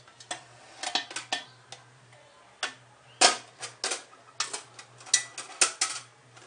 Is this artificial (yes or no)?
no